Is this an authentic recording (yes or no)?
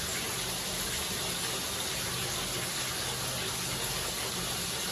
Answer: yes